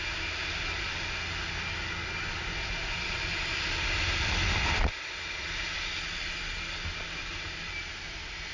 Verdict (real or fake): real